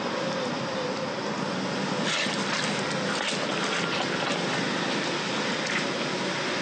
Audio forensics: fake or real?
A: real